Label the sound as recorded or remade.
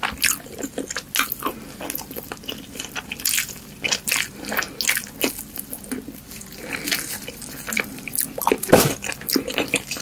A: recorded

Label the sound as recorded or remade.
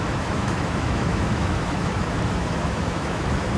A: remade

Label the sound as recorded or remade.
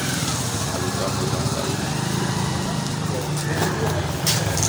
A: recorded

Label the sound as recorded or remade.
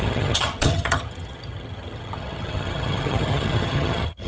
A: remade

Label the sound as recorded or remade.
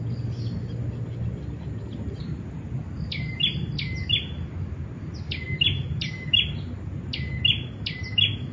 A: recorded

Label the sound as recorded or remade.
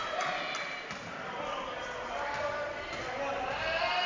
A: recorded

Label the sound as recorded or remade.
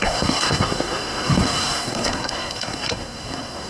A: remade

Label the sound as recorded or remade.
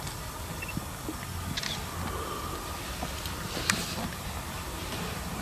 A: recorded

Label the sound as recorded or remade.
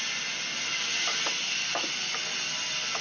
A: recorded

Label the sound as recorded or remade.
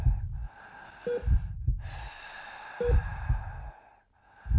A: recorded